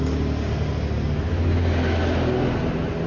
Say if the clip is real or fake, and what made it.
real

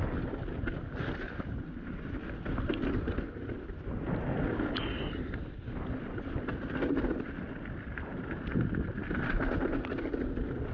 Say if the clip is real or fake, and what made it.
real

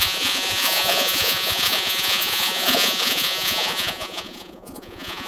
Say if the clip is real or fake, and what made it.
fake, vocoder, Vocos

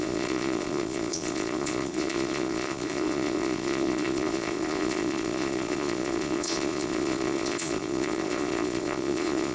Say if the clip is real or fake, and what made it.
fake, vocoder, Vocos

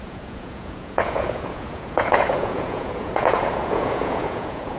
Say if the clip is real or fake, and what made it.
fake, vocoder, Vocos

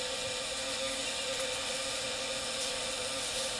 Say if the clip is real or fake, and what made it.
real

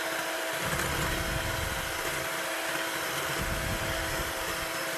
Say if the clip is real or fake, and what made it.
real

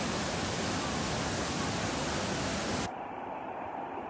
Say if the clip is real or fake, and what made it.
real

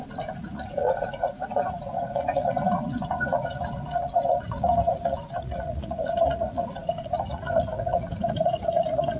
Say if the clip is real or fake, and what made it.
fake, vocoder, Vocos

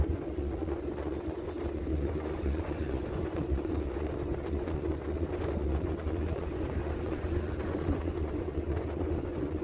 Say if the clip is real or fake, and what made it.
fake, vocoder, Vocos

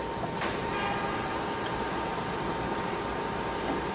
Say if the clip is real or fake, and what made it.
real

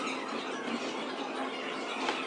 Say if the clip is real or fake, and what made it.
real